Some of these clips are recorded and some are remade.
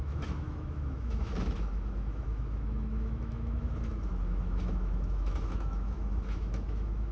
remade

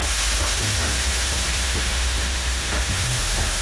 remade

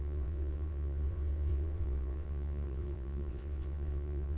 remade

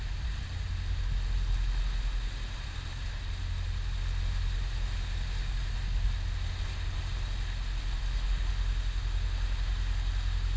recorded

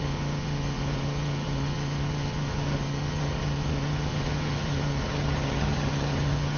remade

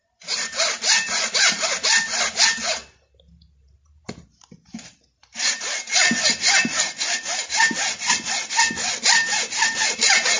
remade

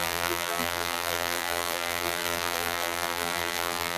remade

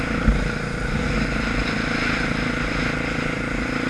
recorded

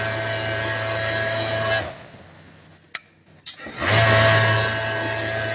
recorded